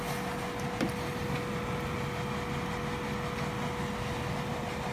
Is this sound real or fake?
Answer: real